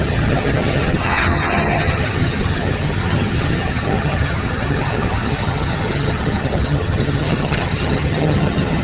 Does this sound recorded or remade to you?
remade